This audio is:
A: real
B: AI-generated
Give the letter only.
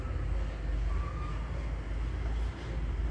A